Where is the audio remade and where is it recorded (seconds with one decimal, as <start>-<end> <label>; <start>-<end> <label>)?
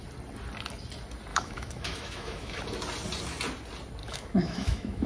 0.0-1.3 recorded; 1.3-2.6 remade; 2.6-4.0 recorded; 4.0-5.1 remade